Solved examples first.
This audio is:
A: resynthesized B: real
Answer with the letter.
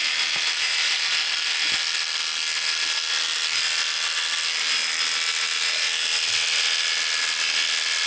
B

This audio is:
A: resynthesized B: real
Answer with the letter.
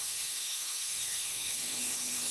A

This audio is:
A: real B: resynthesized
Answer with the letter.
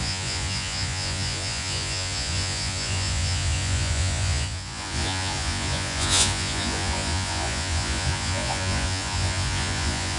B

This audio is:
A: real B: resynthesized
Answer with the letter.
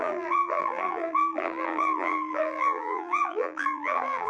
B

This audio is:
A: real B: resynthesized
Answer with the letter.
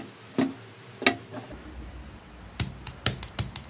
A